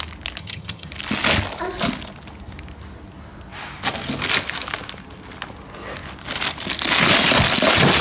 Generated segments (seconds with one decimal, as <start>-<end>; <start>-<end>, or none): 0.4-0.9